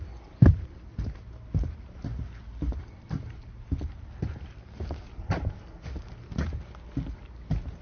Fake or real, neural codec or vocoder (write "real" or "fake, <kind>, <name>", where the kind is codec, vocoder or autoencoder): real